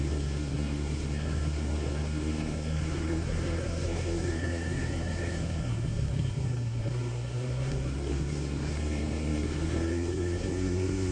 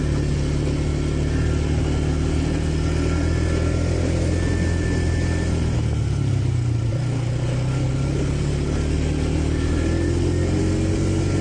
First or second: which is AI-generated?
first